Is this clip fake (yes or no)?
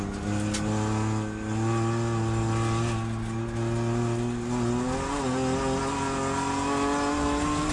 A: no